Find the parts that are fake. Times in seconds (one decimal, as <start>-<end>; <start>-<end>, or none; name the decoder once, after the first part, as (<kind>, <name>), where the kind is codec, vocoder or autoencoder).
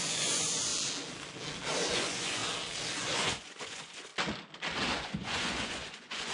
0.0-0.7 (vocoder, Vocos); 1.9-2.4; 3.0-4.1; 4.9-6.3